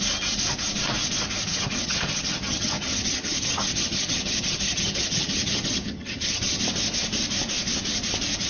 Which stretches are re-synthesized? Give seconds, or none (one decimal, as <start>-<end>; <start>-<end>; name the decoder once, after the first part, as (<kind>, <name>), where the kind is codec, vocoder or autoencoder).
1.5-6.6 (vocoder, HiFi-GAN)